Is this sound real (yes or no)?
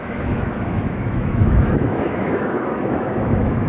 no